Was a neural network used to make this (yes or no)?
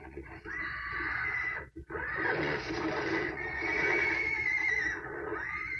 yes